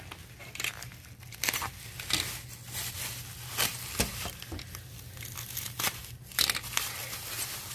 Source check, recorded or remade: recorded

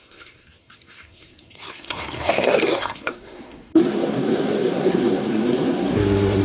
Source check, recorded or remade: remade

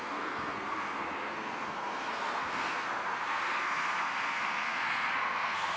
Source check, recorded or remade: remade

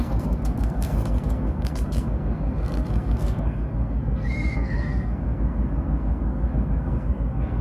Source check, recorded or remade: remade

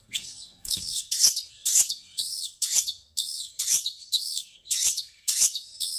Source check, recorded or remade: remade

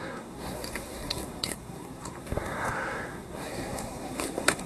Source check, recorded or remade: remade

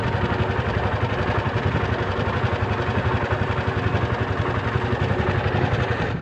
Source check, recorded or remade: recorded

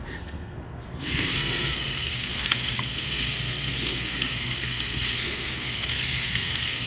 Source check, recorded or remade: remade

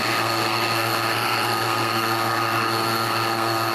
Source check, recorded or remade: remade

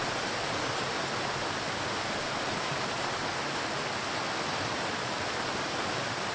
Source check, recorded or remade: recorded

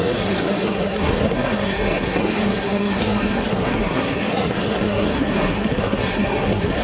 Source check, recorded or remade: remade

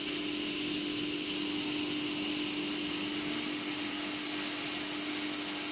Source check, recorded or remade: recorded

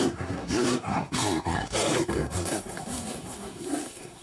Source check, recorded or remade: remade